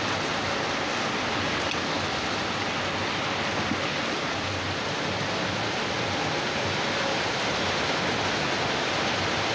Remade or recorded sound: recorded